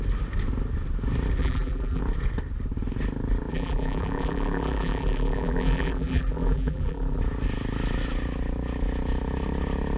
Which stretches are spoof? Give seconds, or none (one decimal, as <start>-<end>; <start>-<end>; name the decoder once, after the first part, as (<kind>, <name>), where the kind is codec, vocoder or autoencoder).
1.4-2.0 (vocoder, BigVGAN v2); 3.5-7.2